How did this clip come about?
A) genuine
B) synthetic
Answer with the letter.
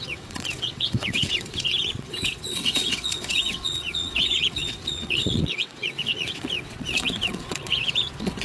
B